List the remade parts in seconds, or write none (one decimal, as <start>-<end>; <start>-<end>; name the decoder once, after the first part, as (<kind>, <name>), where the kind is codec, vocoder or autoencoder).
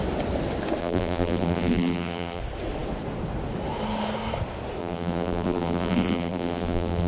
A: 0.8-2.4 (vocoder, BigVGAN v2); 4.8-7.1